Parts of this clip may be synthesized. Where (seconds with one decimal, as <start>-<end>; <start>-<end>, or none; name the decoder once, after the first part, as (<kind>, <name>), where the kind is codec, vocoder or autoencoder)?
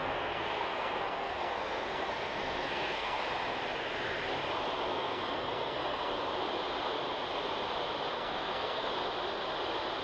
0.0-3.2 (codec, SNAC); 4.9-6.1; 8.1-8.9